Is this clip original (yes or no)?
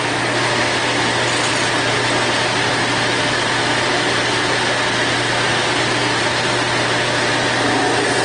yes